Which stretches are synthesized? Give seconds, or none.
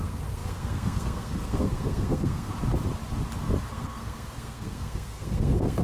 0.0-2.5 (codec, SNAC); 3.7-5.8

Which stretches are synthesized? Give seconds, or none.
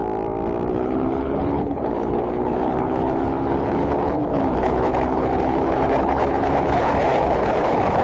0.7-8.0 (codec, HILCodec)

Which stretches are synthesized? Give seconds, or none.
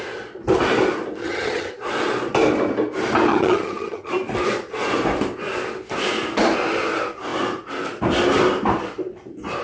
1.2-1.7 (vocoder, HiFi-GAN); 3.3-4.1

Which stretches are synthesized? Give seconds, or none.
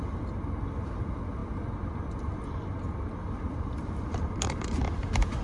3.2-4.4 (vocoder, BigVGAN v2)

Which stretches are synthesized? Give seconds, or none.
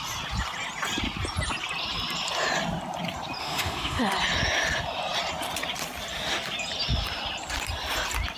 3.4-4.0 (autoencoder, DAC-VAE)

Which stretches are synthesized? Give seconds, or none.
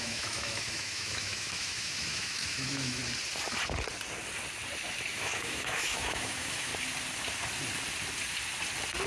0.0-3.0 (autoencoder, DAC-VAE); 5.1-6.7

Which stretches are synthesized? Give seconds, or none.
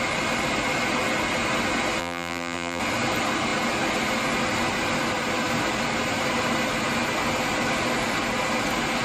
2.0-2.8 (vocoder, BigVGAN v2)